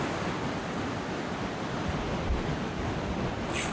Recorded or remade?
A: recorded